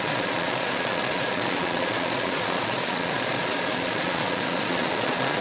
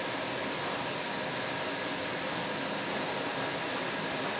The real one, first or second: second